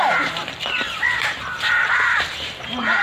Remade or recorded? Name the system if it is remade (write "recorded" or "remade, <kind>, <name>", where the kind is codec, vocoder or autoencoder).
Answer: remade, vocoder, BigVGAN v2